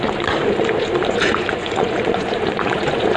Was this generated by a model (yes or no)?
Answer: yes